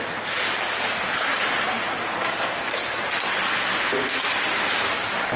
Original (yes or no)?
yes